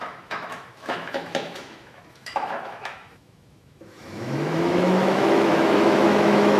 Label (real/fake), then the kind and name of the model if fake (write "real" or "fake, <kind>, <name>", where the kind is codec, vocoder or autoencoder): fake, autoencoder, DAC-VAE